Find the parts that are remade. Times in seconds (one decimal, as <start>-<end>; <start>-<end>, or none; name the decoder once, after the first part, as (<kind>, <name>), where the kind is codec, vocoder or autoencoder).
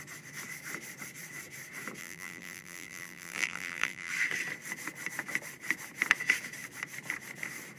2.0-4.1 (vocoder, BigVGAN v2)